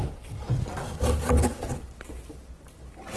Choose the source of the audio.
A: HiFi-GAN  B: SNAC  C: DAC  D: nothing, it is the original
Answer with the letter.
D